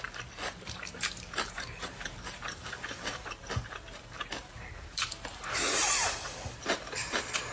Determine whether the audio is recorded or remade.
remade